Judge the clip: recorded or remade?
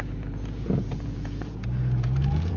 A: remade